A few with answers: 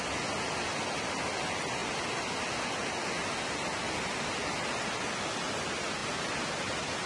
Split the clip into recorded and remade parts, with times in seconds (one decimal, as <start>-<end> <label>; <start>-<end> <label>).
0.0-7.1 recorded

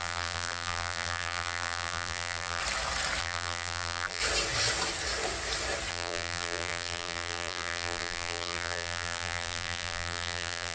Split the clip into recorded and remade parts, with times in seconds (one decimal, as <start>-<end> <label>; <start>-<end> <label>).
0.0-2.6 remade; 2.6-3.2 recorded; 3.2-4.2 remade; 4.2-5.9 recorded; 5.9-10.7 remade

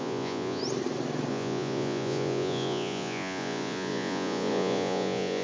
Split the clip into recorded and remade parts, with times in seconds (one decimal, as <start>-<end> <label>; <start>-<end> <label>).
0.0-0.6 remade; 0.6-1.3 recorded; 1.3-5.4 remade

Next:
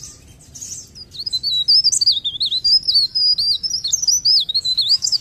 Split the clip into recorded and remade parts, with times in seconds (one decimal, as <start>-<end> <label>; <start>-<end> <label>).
0.0-4.3 recorded; 4.3-5.2 remade